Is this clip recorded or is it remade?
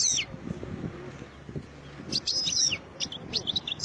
recorded